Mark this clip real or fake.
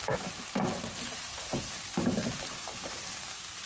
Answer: fake